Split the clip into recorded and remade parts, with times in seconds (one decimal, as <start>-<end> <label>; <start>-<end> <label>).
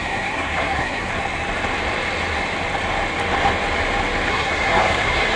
0.0-1.1 remade; 1.1-4.3 recorded; 4.3-5.4 remade